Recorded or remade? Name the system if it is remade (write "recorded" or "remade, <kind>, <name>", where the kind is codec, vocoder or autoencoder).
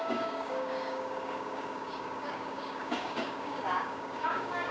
remade, codec, DAC